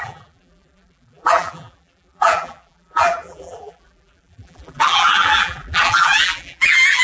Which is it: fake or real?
fake